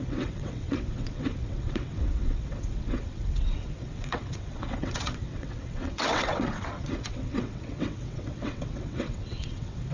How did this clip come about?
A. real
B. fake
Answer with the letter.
B